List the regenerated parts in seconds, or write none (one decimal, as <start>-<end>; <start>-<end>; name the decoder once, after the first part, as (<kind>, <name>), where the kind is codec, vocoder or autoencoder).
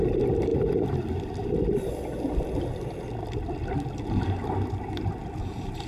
0.0-0.5 (vocoder, BigVGAN v2); 4.0-5.2